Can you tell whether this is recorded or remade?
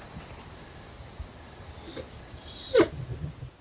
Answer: recorded